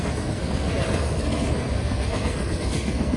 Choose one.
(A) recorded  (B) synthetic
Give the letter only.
B